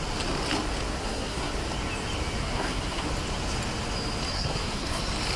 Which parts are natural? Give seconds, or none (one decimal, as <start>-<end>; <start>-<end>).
0.0-1.0; 1.5-2.4; 3.1-4.3; 5.0-5.4